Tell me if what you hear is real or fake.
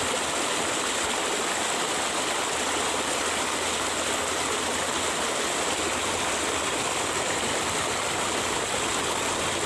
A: real